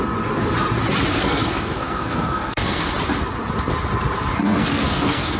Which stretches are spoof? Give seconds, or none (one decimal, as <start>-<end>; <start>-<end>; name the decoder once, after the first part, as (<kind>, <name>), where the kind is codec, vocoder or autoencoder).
1.1-2.9 (codec, SNAC); 4.4-5.4